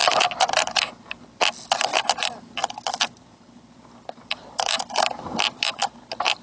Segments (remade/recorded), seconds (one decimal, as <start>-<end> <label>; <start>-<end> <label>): 0.0-6.4 recorded